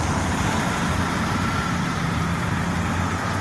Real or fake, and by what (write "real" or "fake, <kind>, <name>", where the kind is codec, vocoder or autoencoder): real